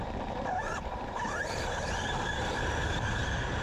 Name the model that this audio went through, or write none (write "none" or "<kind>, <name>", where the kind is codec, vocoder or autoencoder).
vocoder, BigVGAN v2